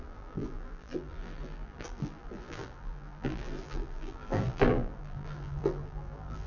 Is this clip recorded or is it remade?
remade